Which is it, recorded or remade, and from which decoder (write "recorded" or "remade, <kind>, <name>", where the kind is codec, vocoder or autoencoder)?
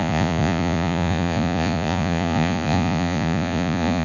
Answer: remade, vocoder, Vocos